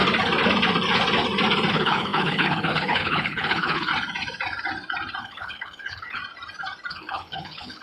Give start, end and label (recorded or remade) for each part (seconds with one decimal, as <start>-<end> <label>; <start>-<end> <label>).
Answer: 0.0-1.7 recorded; 1.7-3.9 remade; 3.9-5.2 recorded; 5.2-6.2 remade; 6.2-6.9 recorded; 6.9-7.8 remade